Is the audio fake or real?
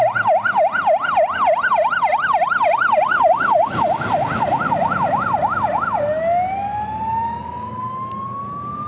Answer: real